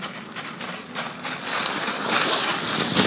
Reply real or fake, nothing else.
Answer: real